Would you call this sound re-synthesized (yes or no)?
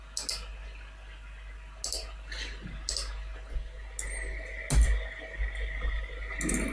no